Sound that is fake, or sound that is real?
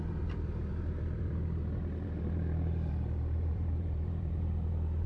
fake